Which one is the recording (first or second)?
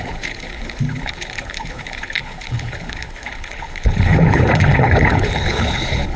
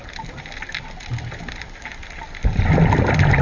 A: second